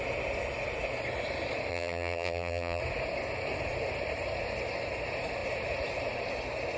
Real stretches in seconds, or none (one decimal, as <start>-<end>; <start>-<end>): 0.0-1.7; 2.8-6.8